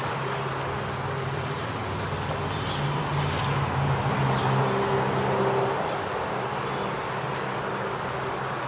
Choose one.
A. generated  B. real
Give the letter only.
B